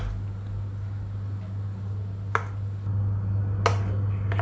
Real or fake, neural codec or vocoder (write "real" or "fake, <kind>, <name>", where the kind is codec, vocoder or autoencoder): real